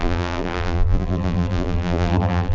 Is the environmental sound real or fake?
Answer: fake